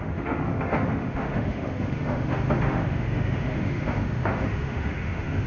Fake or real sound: fake